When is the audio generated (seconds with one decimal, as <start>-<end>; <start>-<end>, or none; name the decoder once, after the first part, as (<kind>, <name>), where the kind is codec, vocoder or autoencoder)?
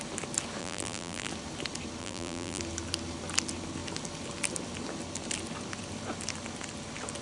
0.6-1.3 (vocoder, BigVGAN v2); 2.0-2.6